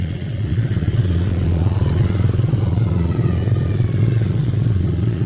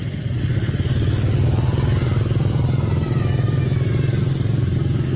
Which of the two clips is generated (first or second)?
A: first